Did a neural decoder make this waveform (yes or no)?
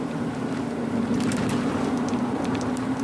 yes